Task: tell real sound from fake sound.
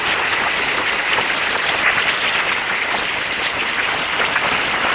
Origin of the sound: fake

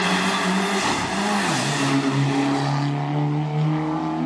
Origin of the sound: real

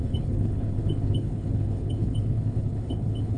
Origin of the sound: fake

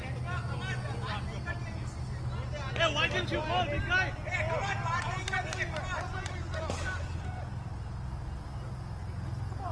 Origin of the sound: real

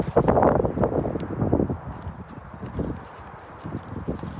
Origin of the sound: real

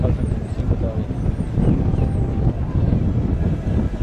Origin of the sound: real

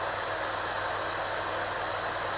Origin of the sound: real